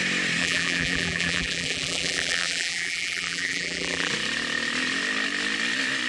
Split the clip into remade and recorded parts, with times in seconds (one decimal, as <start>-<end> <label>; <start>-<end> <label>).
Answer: 0.0-0.4 recorded; 0.4-4.1 remade; 4.1-6.1 recorded